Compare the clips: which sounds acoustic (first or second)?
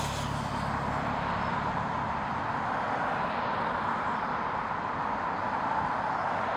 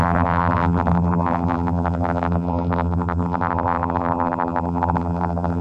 first